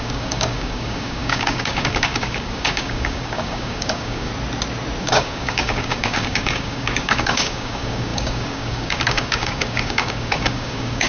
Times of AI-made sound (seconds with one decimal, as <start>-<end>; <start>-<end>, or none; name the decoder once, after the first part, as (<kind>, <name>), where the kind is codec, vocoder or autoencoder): 0.0-4.3 (codec, DAC); 5.0-11.1